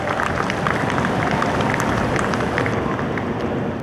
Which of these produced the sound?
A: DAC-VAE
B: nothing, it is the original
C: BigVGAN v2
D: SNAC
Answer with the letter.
B